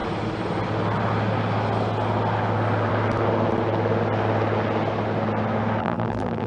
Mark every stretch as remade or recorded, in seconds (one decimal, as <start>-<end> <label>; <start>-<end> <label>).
0.0-5.8 recorded; 5.8-6.5 remade